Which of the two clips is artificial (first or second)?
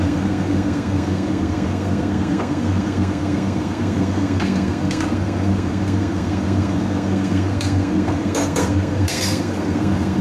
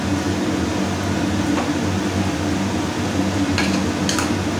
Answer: first